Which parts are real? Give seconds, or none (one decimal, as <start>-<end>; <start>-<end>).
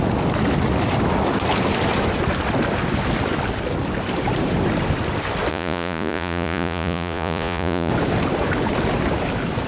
0.0-5.5; 7.9-9.7